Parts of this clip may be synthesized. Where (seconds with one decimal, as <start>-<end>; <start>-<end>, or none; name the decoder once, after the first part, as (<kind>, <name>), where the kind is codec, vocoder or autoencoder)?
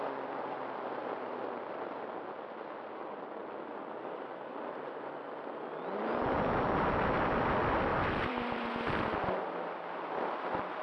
3.4-4.8 (vocoder, BigVGAN v2); 7.9-8.7